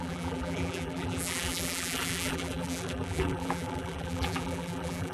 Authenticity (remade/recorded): remade